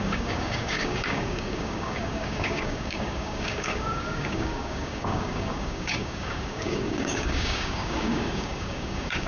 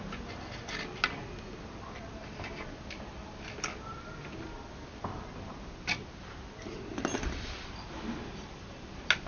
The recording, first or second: second